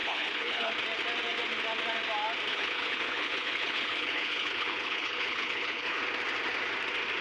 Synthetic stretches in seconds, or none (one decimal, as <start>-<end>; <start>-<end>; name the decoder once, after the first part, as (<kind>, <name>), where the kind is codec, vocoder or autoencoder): 0.0-0.7 (codec, HILCodec); 2.5-6.0